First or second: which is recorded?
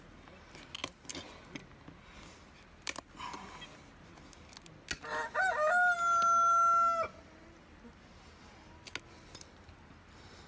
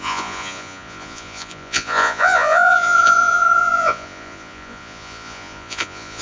first